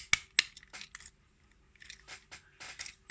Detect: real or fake real